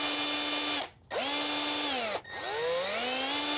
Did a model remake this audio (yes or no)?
no